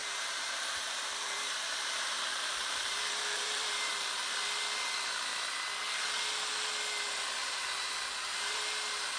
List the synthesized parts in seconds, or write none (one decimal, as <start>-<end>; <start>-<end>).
0.0-3.9; 7.4-8.6